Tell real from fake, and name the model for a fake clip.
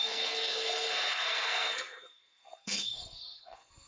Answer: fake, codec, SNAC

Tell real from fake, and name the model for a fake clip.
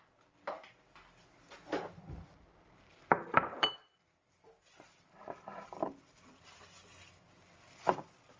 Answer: real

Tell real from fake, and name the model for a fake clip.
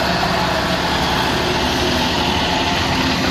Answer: real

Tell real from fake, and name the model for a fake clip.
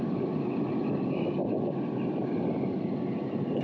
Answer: real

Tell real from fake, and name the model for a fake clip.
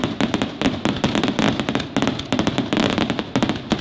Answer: real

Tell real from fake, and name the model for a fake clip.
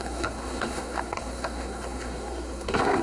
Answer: fake, codec, SNAC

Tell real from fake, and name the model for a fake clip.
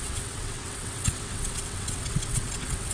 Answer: fake, vocoder, WaveNeXt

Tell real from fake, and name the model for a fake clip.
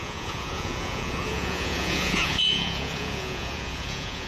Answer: fake, vocoder, Vocos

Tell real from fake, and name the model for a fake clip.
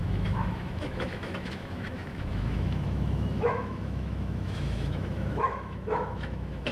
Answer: fake, autoencoder, DAC-VAE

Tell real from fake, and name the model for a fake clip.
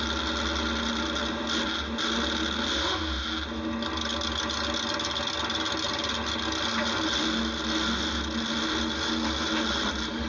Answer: real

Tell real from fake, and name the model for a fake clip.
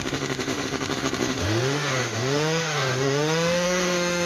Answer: fake, autoencoder, DAC-VAE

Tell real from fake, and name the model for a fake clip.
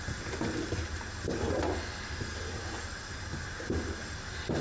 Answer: real